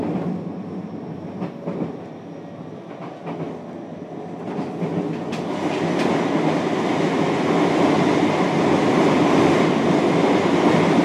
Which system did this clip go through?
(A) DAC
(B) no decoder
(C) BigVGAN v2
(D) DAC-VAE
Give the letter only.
B